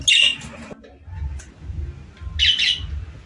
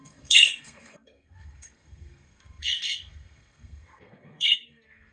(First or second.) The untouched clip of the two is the first